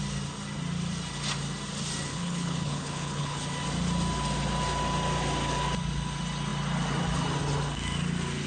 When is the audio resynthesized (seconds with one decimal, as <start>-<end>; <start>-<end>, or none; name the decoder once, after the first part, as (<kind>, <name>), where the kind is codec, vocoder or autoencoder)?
2.1-3.4 (codec, HILCodec)